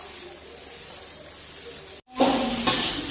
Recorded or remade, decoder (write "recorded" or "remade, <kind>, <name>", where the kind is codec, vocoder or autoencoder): recorded